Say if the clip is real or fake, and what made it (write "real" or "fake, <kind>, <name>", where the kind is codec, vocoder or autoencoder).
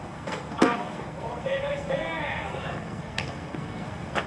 fake, codec, SNAC